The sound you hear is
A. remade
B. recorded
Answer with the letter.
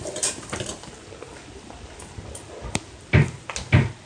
B